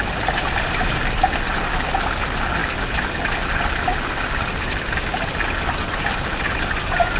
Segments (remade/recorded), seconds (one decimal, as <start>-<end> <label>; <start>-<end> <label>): 0.0-7.2 recorded